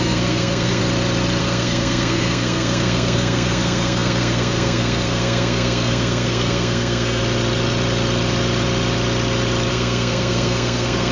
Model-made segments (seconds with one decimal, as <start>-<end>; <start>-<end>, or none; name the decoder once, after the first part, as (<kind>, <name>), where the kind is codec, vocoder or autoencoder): 0.0-0.8 (codec, SNAC); 1.4-7.2; 9.7-11.1